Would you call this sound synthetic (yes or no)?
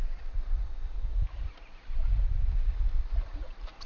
no